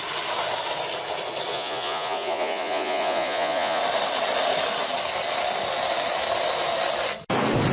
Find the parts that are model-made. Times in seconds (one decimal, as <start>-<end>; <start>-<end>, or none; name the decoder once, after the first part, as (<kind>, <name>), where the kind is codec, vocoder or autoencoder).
1.5-3.8 (vocoder, Vocos)